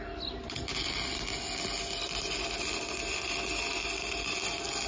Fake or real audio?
real